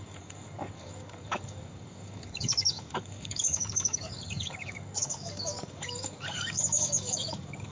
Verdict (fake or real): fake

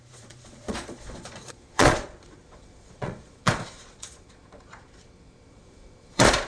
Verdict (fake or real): fake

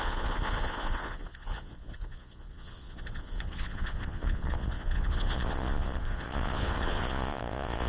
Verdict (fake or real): fake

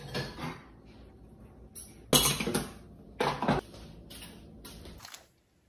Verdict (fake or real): real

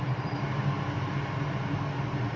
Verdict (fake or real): real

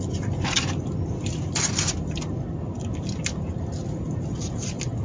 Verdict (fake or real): real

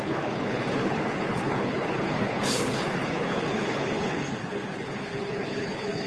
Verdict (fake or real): fake